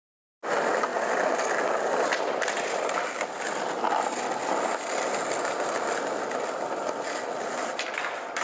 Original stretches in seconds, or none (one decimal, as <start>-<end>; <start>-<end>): 0.0-8.4